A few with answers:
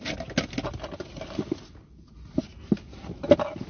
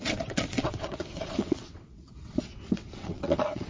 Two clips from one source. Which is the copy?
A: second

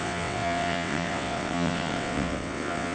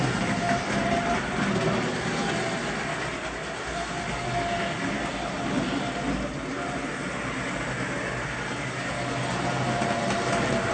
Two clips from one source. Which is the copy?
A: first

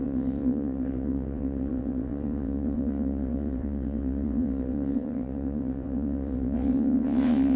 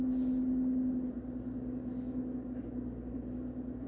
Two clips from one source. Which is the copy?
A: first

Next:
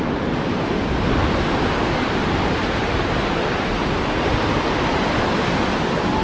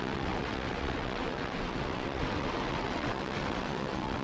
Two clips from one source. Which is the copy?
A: second